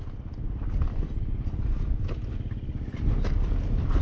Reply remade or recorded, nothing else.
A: recorded